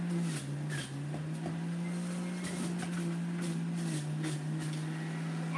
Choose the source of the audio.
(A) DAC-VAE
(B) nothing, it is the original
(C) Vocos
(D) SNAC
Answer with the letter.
B